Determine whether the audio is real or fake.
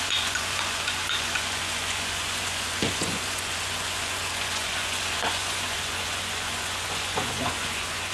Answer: fake